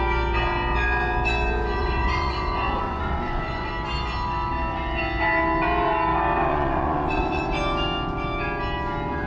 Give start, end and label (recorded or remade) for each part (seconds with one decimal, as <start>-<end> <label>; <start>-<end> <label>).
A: 0.0-1.8 recorded; 1.8-3.7 remade; 3.7-6.5 recorded; 6.5-7.4 remade; 7.4-9.3 recorded